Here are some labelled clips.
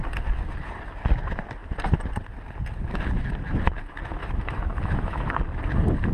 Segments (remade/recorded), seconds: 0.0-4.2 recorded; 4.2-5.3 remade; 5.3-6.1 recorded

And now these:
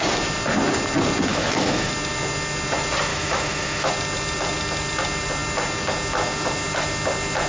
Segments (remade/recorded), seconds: 0.0-1.3 recorded; 1.3-1.9 remade; 1.9-3.1 recorded; 3.1-3.9 remade; 3.9-7.5 recorded

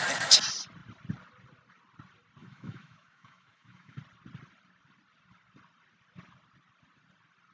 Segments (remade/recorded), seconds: 0.0-2.4 recorded; 2.4-4.0 remade; 4.0-7.5 recorded

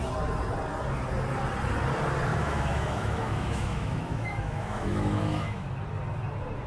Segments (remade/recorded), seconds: 0.0-2.3 recorded; 2.3-5.7 remade; 5.7-6.7 recorded

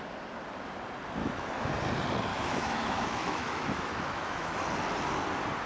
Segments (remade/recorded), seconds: 0.0-1.2 recorded; 1.2-1.7 remade; 1.7-2.3 recorded; 2.3-4.6 remade; 4.6-5.7 recorded

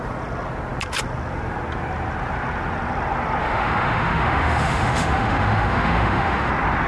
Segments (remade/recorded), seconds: 0.0-3.4 recorded; 3.4-6.5 remade; 6.5-6.9 recorded

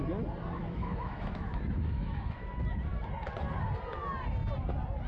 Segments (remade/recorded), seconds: 0.0-0.6 recorded; 0.6-2.5 remade; 2.5-5.1 recorded

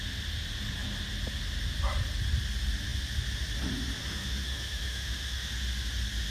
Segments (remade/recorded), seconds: 0.0-4.0 recorded; 4.0-5.5 remade; 5.5-6.3 recorded